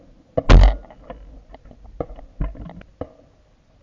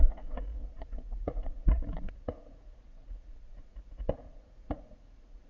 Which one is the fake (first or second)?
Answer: second